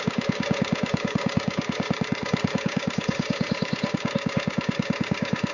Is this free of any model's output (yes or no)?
no